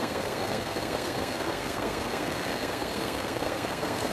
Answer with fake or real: fake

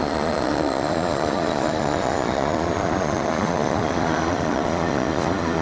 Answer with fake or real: fake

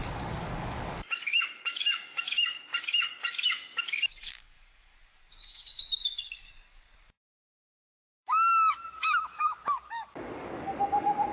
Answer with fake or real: fake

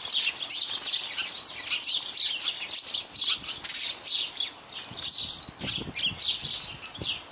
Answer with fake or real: real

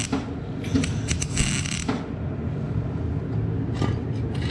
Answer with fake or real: real